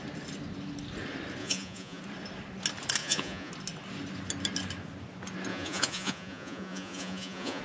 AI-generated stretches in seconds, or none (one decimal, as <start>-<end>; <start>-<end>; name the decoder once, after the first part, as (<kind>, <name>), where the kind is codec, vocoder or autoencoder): 1.4-2.0 (vocoder, Vocos); 3.0-3.5; 5.5-7.6

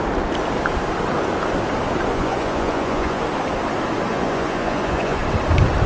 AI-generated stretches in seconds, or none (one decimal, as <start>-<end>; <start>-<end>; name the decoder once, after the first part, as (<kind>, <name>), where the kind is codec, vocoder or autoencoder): 2.1-3.2 (vocoder, Vocos); 4.1-5.2

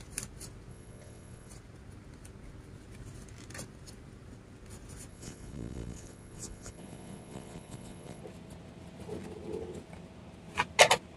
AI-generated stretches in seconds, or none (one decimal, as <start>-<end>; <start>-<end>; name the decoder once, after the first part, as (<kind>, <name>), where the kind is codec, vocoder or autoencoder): 0.7-1.5 (vocoder, Vocos); 5.1-8.2

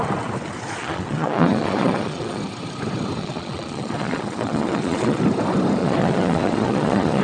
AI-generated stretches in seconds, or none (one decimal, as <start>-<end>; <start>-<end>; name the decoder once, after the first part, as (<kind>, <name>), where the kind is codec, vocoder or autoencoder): 0.8-2.4 (vocoder, Vocos); 3.2-5.2; 5.8-7.2

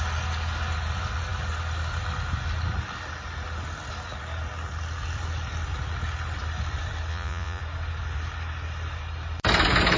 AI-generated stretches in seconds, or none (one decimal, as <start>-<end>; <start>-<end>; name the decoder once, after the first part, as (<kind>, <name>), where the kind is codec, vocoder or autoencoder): 7.1-7.6 (vocoder, Vocos)

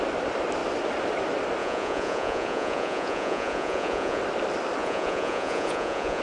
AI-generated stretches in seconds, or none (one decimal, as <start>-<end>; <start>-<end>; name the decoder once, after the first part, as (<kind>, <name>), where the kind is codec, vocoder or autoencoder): 1.6-4.2 (vocoder, Vocos); 4.8-6.2

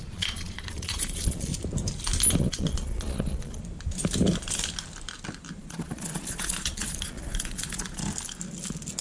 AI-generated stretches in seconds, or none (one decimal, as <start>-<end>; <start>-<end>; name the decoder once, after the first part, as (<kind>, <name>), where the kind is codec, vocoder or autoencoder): 0.0-1.5 (vocoder, Vocos); 2.4-3.6; 5.6-8.0

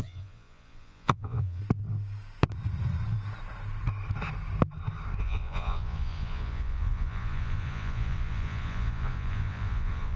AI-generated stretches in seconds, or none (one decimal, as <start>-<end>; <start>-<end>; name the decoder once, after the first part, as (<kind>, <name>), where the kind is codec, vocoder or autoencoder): 0.0-1.6 (vocoder, Vocos); 5.2-10.2